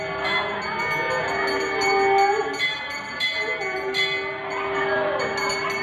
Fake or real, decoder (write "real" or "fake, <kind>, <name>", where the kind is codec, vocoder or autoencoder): real